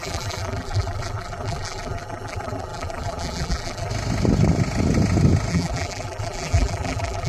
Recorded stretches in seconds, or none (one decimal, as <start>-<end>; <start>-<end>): 3.9-5.5